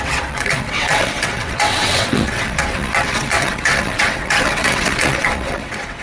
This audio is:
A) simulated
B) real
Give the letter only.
A